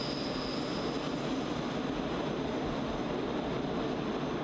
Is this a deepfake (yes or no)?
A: no